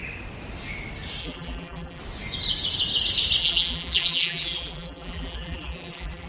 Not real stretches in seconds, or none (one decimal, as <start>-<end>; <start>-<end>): 1.2-2.0; 3.4-6.3